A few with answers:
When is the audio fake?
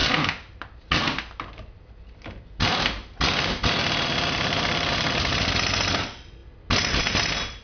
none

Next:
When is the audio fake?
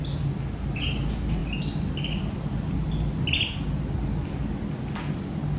none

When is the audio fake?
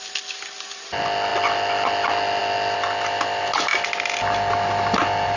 none